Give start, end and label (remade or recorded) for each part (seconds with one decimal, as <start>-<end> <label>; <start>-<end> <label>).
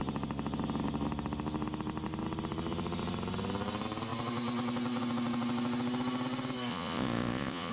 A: 0.0-6.7 recorded; 6.7-7.7 remade